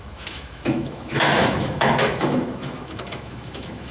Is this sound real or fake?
fake